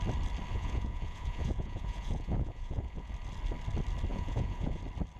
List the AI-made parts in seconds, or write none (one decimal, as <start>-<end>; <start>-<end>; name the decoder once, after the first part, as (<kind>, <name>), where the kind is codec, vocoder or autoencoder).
0.5-3.1 (vocoder, Vocos); 4.1-4.8